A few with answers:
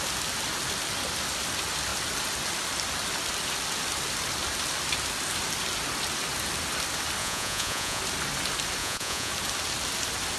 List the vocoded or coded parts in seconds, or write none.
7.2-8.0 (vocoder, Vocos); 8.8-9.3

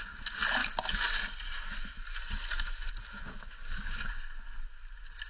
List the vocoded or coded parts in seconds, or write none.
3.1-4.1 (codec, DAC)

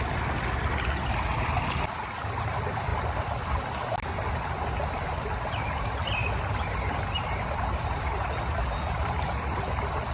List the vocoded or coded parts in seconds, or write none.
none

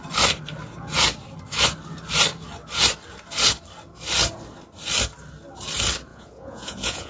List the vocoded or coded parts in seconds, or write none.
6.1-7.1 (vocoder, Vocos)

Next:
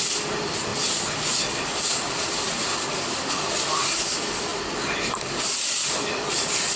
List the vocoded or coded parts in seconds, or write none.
none

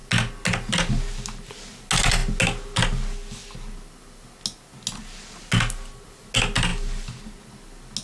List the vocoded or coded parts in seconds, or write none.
none